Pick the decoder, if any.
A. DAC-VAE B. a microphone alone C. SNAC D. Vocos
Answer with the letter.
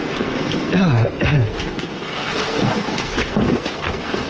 C